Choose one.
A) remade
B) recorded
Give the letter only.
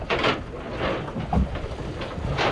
B